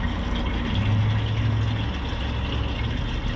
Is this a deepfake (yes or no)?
no